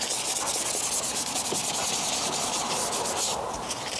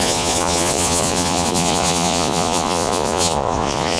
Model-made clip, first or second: second